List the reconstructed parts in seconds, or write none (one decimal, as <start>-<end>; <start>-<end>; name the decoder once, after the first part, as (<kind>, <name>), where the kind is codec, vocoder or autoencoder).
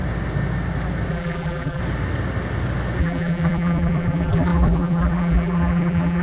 1.1-1.8 (vocoder, BigVGAN v2); 3.0-6.2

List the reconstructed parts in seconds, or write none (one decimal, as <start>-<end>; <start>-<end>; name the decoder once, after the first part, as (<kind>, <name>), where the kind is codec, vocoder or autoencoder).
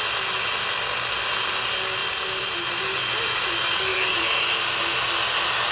2.0-2.7 (vocoder, BigVGAN v2); 3.9-4.6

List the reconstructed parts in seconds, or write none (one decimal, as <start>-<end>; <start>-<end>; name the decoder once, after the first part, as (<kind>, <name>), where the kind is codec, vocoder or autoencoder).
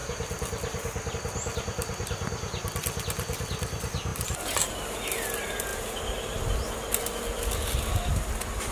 4.1-5.0 (vocoder, BigVGAN v2)